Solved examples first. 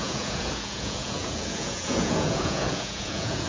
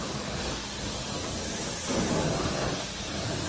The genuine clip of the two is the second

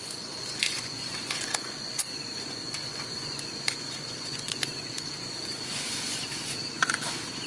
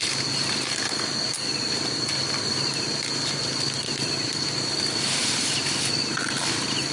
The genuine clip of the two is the second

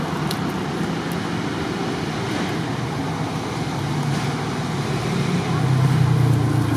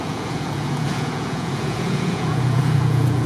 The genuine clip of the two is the first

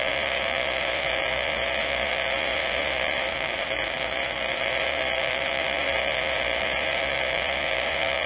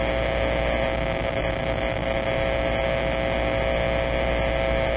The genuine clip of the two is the second